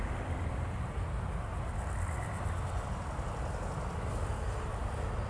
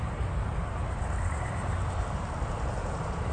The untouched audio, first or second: first